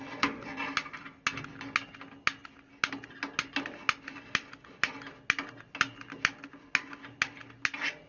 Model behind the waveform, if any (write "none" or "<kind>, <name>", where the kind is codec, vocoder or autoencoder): none